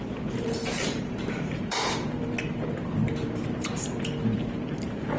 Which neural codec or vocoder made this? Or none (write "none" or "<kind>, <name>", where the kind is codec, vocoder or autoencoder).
vocoder, BigVGAN v2